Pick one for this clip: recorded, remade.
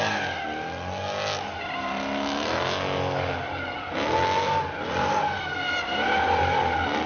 recorded